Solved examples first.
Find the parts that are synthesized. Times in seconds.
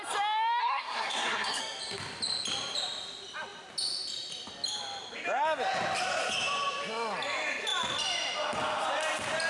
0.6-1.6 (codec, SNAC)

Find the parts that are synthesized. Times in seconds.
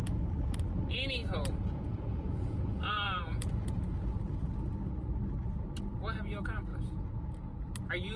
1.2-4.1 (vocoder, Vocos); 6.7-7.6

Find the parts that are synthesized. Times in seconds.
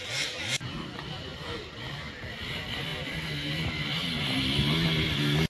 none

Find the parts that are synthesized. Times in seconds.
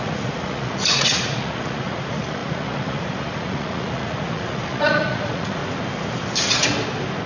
0.0-5.6 (vocoder, Vocos)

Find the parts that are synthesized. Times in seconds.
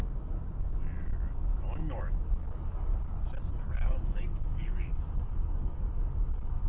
0.0-0.4 (codec, DAC); 1.9-2.9; 3.5-6.7